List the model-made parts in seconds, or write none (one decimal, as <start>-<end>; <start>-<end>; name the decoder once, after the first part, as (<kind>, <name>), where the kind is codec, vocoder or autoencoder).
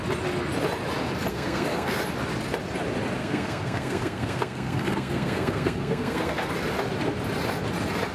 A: 1.3-2.0 (codec, SNAC); 3.2-6.5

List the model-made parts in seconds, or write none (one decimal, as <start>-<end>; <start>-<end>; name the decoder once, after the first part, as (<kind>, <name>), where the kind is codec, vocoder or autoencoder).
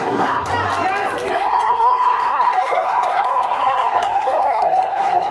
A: 0.0-0.5 (codec, SNAC); 1.3-5.3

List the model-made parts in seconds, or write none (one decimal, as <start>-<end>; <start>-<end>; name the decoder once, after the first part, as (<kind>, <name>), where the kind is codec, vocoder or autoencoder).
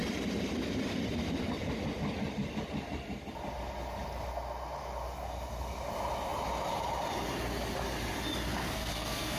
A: 8.6-9.4 (codec, SNAC)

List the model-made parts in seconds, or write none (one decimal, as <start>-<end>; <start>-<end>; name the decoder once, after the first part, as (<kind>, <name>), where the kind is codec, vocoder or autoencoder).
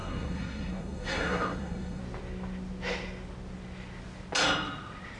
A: 0.0-2.0 (codec, SNAC)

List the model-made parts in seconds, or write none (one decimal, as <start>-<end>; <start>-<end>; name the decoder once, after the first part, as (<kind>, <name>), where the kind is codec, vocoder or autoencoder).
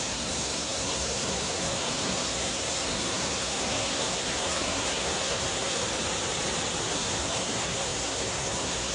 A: 0.0-5.8 (codec, SNAC); 6.8-8.9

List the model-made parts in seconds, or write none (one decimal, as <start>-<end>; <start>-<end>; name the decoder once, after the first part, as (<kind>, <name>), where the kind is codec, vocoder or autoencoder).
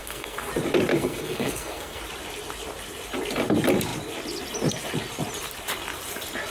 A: 0.0-0.5 (codec, SNAC); 0.9-2.0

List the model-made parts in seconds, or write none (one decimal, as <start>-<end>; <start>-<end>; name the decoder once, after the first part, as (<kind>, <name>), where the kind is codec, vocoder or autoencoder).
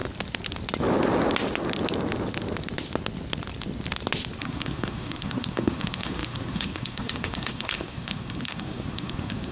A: 4.4-9.5 (codec, SNAC)